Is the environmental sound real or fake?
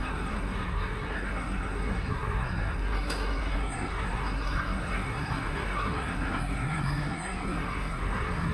fake